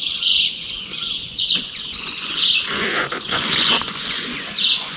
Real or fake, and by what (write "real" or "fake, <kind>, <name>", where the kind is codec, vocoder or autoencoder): fake, vocoder, Vocos